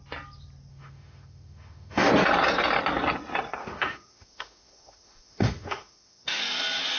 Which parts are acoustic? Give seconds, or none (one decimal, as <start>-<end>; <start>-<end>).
0.0-0.7; 2.1-3.6; 6.4-7.0